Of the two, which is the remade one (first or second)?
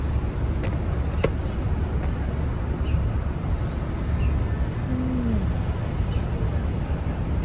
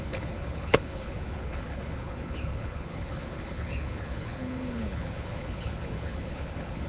second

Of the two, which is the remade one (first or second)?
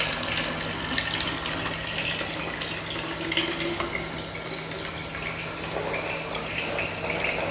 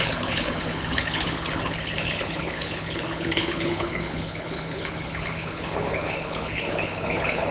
second